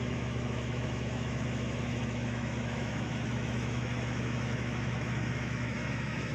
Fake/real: fake